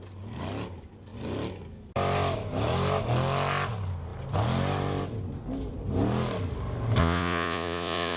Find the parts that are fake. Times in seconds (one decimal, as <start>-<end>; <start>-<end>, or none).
7.0-8.2

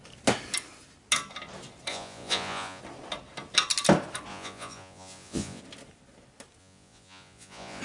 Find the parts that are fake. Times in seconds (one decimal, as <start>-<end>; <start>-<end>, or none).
1.9-2.8; 4.3-5.6; 6.6-7.8

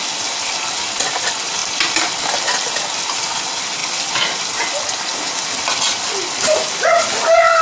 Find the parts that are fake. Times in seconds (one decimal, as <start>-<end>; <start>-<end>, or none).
none

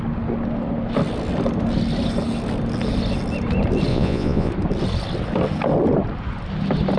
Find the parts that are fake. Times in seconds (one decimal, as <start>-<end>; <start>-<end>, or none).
3.9-4.5

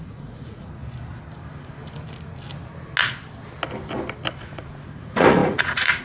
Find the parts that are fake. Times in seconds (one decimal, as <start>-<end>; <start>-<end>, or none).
0.0-0.8; 4.4-6.0

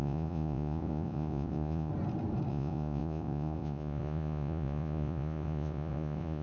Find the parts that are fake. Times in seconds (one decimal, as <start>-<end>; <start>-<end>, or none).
0.0-1.9; 2.5-6.4